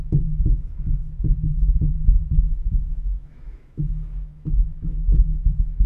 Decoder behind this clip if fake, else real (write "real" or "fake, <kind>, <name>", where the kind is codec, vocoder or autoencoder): fake, autoencoder, DAC-VAE